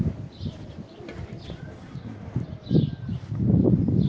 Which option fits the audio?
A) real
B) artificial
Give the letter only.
A